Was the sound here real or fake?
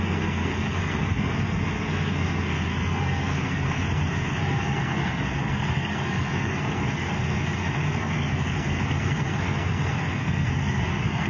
fake